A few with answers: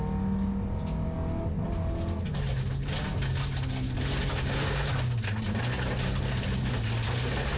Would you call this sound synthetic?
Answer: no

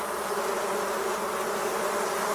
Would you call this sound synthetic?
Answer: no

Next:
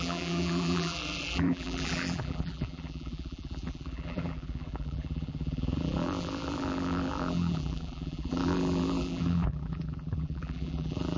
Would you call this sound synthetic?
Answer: yes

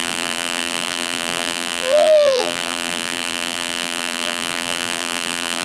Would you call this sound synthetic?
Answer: yes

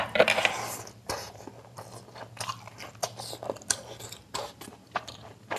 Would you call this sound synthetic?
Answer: yes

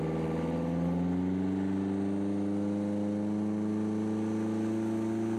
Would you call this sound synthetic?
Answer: no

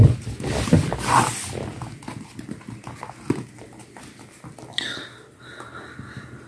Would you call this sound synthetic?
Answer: no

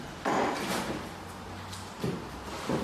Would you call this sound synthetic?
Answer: no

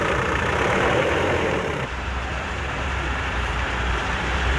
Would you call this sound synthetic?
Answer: yes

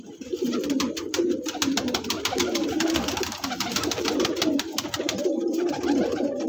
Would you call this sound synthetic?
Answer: yes